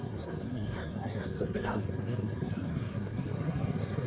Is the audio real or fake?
fake